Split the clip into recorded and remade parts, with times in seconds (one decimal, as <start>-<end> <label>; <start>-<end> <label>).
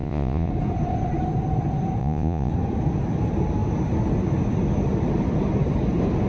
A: 0.0-0.5 remade; 0.5-2.0 recorded; 2.0-2.5 remade; 2.5-6.3 recorded